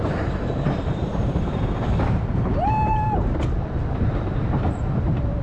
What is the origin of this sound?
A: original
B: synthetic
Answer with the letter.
B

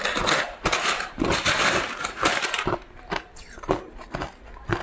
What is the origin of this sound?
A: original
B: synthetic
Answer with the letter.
B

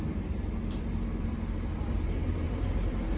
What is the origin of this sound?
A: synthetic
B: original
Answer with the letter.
A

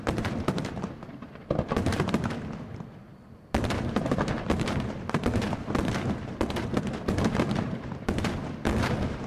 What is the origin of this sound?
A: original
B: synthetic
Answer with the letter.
B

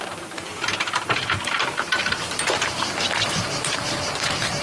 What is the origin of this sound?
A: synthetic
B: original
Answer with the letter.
A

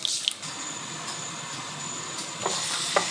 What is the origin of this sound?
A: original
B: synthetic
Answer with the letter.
A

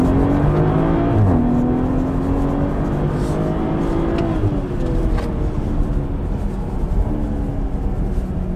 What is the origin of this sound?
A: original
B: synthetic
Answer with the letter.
A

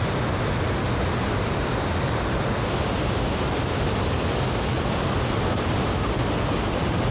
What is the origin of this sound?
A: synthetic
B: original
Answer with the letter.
A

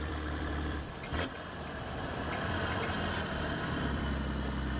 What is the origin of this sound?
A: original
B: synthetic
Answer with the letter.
B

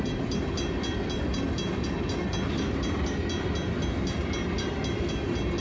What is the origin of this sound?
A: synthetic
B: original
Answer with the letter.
B